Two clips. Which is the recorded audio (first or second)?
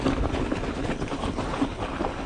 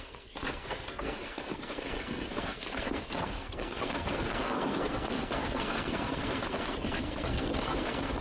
first